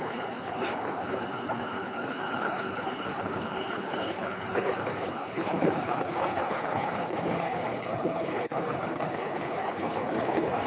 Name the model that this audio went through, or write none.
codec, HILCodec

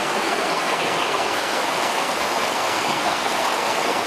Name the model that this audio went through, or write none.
codec, SNAC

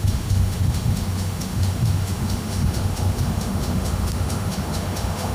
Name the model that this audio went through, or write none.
autoencoder, DAC-VAE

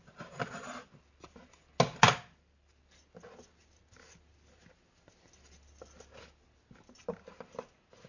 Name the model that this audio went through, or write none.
none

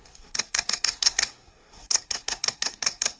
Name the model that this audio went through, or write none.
codec, SNAC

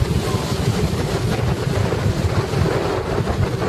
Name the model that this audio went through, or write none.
none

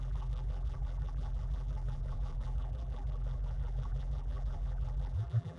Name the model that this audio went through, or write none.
vocoder, BigVGAN v2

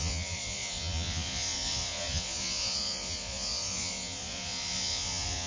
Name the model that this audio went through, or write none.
vocoder, Vocos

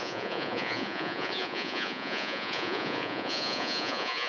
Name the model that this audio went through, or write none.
vocoder, Vocos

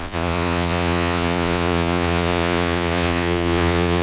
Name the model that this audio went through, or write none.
vocoder, Vocos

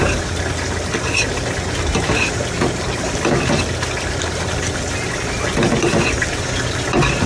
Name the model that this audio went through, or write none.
none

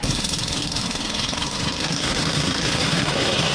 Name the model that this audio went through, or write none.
codec, SNAC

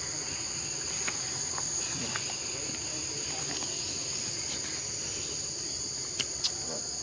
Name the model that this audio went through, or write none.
none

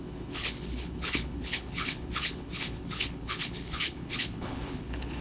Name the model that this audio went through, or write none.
codec, HILCodec